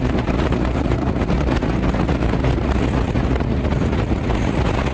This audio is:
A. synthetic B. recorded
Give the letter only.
A